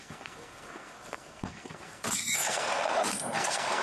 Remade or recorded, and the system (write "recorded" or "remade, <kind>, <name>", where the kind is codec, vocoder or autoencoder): remade, codec, SNAC